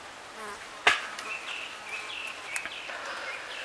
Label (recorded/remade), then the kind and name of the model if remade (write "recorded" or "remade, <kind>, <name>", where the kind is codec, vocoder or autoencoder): recorded